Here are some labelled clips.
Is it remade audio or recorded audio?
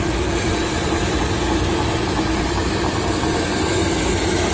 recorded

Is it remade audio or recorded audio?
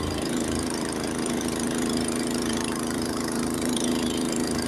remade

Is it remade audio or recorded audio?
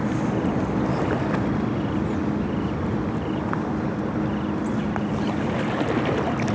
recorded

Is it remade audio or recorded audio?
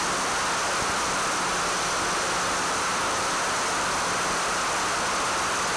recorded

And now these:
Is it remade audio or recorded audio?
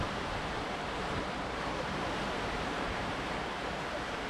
remade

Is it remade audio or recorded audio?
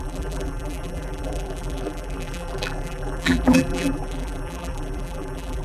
remade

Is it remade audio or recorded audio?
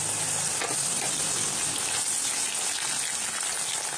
recorded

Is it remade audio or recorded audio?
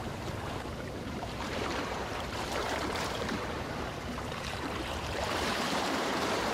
remade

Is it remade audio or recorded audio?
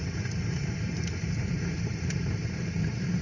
remade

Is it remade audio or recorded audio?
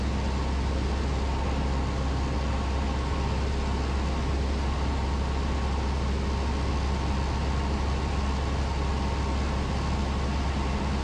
recorded